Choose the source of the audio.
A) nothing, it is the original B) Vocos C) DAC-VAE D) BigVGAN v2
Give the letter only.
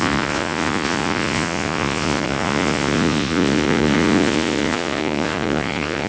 B